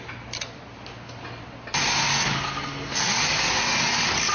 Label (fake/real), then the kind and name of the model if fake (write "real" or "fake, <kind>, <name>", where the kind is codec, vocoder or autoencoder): real